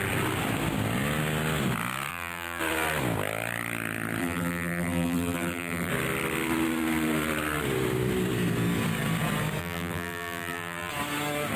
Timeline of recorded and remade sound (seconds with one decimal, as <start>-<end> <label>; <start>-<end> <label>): 0.0-2.1 recorded; 2.1-2.6 remade; 2.6-4.2 recorded; 4.2-5.9 remade; 5.9-9.6 recorded; 9.6-10.9 remade; 10.9-11.6 recorded